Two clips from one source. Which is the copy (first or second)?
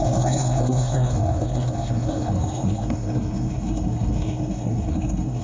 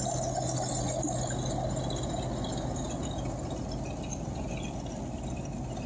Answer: first